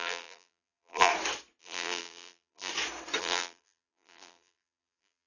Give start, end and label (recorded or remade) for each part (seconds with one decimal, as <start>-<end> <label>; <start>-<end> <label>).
0.0-1.1 remade; 1.1-1.6 recorded; 1.6-2.7 remade; 2.7-3.2 recorded; 3.2-5.3 remade